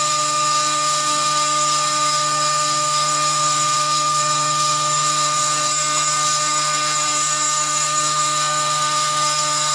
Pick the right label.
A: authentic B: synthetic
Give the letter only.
B